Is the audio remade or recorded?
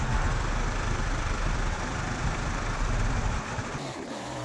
remade